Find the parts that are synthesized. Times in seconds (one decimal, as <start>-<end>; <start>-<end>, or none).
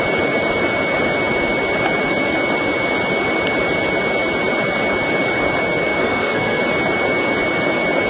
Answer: 5.9-6.6